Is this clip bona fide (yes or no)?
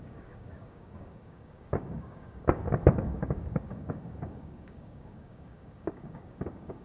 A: no